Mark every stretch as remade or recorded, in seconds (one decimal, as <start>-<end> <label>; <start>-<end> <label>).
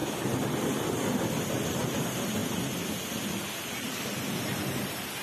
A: 0.0-0.6 recorded; 0.6-2.4 remade; 2.4-4.1 recorded; 4.1-5.2 remade